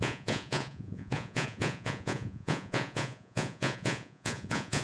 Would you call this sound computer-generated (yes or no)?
yes